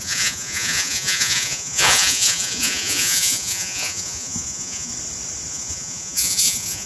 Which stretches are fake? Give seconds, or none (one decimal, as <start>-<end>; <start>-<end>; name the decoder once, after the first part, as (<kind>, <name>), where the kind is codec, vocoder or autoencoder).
0.0-4.9 (vocoder, Vocos); 5.5-6.9

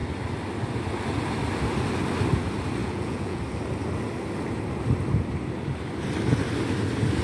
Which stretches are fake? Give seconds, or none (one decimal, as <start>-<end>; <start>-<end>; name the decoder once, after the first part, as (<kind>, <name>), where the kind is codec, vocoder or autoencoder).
2.8-3.4 (vocoder, Vocos)

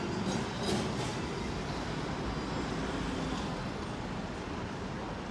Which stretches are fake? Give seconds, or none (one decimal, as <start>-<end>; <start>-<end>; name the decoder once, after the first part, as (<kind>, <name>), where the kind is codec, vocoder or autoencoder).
none

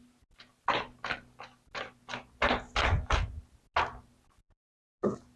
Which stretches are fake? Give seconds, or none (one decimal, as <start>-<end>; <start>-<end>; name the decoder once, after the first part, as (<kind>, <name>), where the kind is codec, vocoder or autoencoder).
none

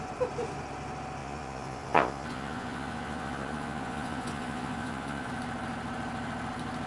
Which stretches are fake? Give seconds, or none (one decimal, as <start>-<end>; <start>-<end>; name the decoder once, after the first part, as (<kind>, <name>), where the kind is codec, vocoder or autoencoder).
1.2-5.3 (vocoder, Vocos)

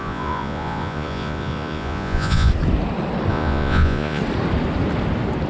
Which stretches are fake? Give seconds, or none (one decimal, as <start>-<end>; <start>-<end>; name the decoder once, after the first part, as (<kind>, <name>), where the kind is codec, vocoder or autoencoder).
0.0-2.5 (vocoder, Vocos); 3.3-4.2

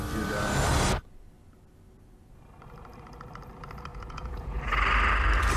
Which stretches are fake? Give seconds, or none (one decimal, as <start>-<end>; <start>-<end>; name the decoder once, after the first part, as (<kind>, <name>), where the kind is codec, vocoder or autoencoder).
3.9-4.6 (vocoder, Vocos)

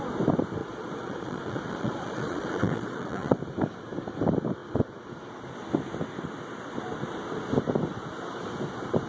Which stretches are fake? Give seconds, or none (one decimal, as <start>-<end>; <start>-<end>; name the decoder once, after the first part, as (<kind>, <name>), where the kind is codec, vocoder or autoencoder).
0.6-3.4 (vocoder, Vocos)